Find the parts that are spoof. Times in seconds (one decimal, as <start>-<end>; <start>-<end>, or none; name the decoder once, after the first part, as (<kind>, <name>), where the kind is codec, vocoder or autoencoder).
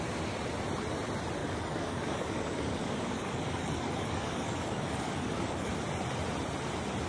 1.4-5.7 (codec, DAC)